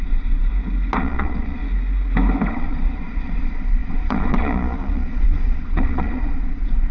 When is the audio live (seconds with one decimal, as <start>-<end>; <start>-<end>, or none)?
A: 0.5-1.0; 1.6-2.5

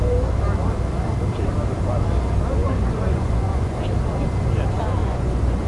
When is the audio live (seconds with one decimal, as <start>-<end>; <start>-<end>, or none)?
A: 0.0-2.6; 3.8-5.0

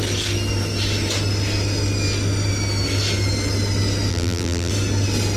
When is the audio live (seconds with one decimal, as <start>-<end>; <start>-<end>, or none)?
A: 0.0-4.1; 4.7-5.4

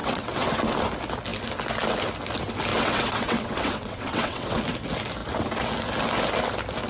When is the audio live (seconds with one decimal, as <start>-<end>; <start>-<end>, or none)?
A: 0.6-2.7; 4.6-6.9

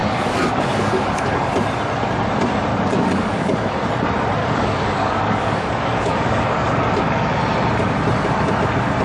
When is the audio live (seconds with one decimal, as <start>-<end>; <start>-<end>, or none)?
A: 1.5-2.7; 3.8-4.4; 7.4-9.0

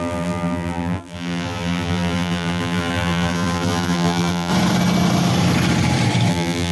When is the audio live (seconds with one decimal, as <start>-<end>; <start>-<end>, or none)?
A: 4.5-6.3